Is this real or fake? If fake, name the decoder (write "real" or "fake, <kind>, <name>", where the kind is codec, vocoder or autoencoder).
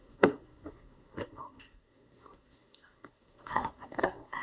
fake, codec, SNAC